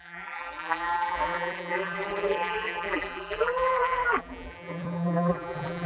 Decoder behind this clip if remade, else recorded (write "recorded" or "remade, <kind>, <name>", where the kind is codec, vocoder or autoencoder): remade, vocoder, BigVGAN v2